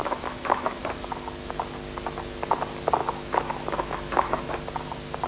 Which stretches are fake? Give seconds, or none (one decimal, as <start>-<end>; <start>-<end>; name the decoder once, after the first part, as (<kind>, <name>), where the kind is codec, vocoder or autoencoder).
0.0-0.7 (autoencoder, DAC-VAE); 3.0-4.5